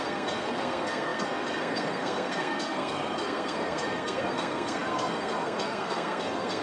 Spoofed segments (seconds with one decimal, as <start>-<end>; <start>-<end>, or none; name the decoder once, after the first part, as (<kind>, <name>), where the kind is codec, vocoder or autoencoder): 0.0-6.6 (codec, SNAC)